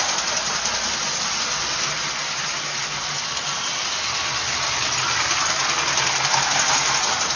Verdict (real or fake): real